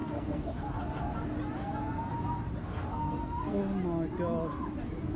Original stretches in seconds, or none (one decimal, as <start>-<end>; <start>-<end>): 0.8-1.6; 2.1-2.6; 3.6-5.2